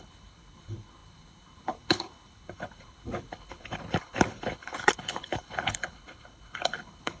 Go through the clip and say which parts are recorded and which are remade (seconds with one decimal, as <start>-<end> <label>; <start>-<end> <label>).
0.0-7.2 remade